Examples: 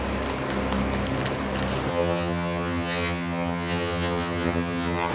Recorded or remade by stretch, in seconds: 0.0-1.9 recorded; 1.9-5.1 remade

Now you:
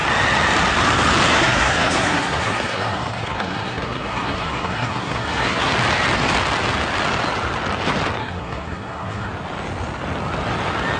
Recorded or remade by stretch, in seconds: 0.0-1.3 recorded; 1.3-5.7 remade; 5.7-8.2 recorded; 8.2-9.3 remade; 9.3-11.0 recorded